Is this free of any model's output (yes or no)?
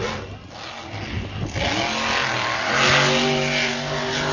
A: yes